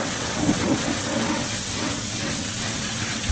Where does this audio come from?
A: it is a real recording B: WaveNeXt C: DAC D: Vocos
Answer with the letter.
B